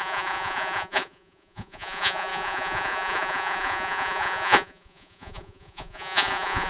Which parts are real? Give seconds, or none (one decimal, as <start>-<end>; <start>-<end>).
none